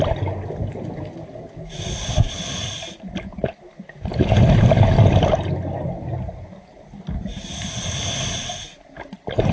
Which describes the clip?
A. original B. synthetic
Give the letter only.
A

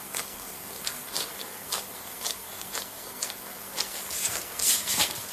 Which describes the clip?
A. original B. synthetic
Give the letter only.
B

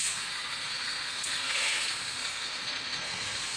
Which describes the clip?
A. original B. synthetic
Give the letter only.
B